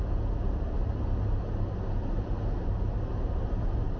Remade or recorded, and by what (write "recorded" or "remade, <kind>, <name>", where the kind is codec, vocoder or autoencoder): recorded